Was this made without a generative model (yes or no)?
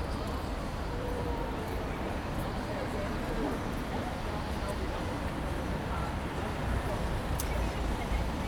no